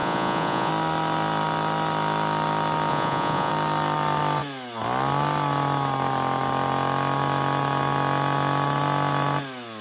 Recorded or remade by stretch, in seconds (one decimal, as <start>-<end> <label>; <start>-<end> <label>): 0.0-0.7 remade; 0.7-2.9 recorded; 2.9-3.5 remade; 3.5-9.8 recorded

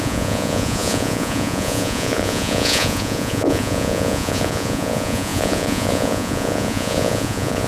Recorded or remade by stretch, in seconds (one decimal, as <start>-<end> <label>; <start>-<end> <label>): 0.0-7.7 remade